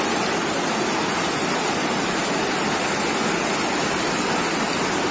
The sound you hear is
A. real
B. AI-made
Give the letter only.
A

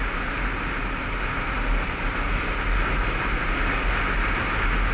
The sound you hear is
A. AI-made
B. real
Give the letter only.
B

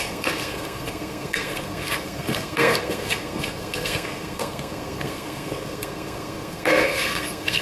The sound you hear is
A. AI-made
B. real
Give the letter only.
A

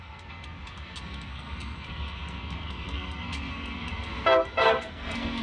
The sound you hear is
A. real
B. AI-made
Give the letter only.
B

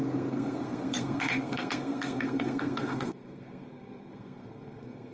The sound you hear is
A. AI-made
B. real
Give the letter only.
A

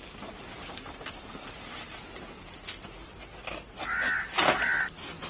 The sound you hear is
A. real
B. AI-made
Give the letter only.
A